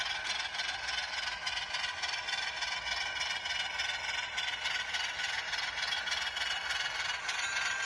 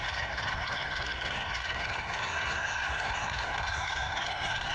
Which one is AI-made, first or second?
second